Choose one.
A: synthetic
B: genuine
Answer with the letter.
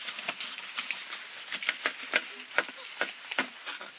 B